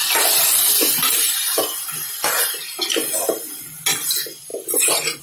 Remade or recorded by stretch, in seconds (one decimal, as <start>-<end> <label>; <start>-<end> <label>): 0.0-5.2 recorded